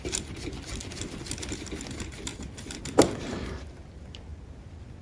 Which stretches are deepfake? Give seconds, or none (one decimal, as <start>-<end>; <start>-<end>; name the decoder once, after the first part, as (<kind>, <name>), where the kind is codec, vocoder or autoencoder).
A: none